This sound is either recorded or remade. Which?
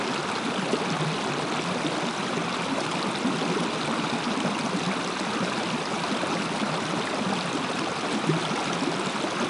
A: recorded